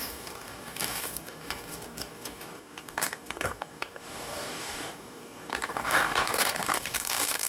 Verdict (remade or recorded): remade